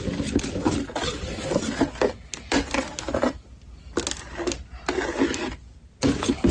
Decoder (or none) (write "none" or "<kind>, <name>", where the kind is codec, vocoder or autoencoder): none